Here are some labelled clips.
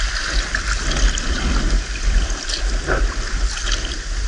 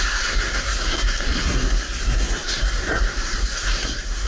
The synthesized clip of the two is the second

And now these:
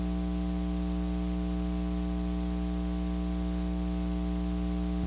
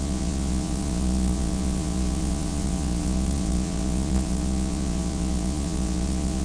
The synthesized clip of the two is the second